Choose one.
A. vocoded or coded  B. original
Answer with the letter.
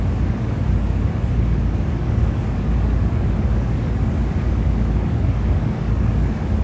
A